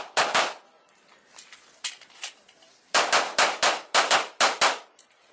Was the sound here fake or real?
real